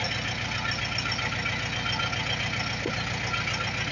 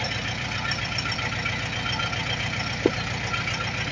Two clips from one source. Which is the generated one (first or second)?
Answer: second